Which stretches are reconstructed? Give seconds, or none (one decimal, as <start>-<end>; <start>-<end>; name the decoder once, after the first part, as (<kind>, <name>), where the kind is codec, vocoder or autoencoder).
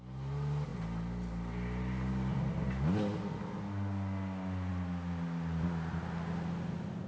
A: none